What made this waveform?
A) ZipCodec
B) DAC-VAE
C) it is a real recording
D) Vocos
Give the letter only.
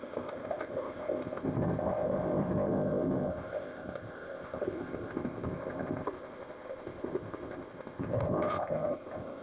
A